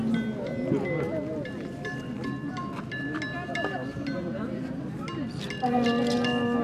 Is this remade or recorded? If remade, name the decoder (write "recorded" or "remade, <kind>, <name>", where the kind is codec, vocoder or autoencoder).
recorded